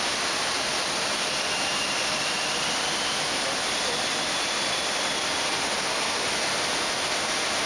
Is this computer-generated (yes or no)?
no